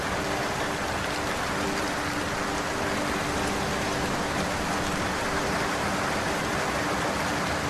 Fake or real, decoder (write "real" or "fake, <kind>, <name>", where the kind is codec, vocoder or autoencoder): real